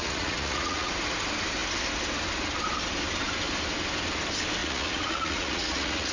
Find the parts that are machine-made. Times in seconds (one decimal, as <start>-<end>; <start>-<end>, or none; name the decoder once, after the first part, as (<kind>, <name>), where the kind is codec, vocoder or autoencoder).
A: 0.0-0.9 (vocoder, Vocos); 4.6-6.1